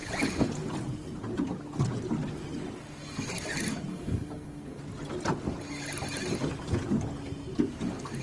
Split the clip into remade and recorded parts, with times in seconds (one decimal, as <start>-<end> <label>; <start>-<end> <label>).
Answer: 0.0-3.9 recorded; 3.9-4.8 remade; 4.8-8.2 recorded